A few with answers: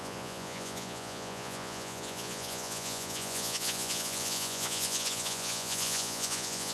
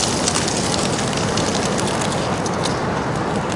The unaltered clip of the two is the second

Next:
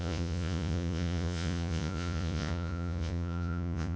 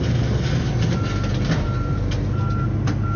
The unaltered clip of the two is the second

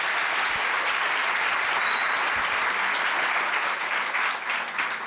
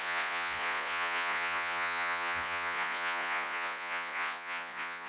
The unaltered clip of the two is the first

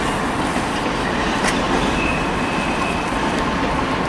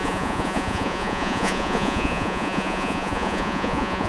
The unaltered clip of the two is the first